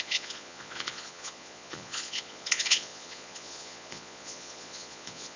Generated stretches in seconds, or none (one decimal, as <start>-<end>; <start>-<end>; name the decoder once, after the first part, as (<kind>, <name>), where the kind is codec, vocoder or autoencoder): 0.0-5.4 (vocoder, Vocos)